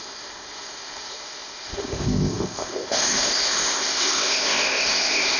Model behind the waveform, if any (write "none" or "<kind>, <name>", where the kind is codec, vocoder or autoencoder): codec, ZipCodec